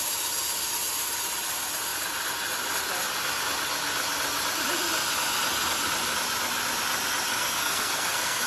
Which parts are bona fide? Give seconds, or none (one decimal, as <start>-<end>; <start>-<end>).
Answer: 0.0-7.3